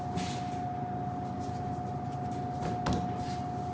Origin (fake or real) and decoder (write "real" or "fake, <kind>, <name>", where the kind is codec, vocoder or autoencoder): real